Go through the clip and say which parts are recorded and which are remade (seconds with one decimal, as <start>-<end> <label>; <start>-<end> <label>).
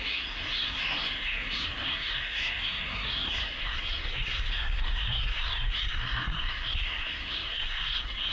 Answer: 0.0-8.3 remade